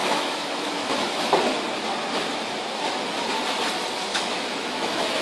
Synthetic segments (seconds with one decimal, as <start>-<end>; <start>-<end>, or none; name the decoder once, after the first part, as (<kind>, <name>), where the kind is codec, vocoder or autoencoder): 0.0-1.4 (autoencoder, DAC-VAE); 4.1-5.2